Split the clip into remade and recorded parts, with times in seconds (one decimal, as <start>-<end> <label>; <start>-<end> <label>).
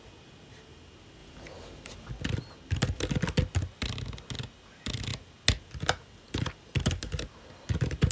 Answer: 0.0-8.1 recorded